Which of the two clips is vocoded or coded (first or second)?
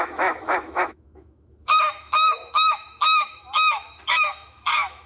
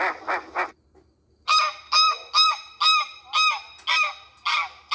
first